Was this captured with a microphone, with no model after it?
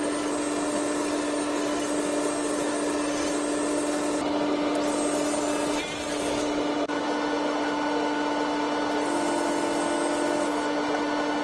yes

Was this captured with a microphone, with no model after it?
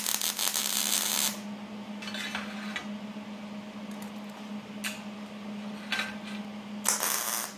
yes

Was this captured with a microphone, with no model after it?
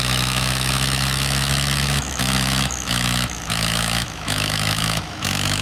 no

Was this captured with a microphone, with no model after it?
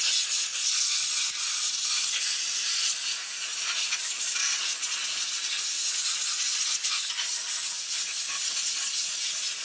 yes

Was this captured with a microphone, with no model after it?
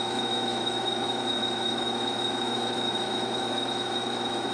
no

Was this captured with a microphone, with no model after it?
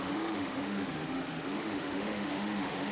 no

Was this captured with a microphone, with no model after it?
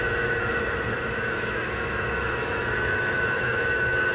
no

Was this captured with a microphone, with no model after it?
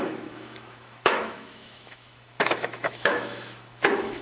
no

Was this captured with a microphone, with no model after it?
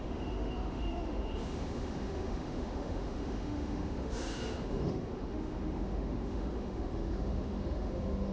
no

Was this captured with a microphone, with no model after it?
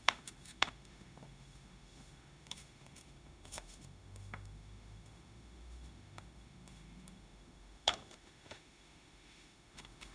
no